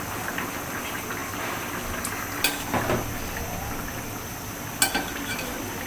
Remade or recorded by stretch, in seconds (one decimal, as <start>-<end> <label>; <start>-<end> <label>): 0.0-5.9 recorded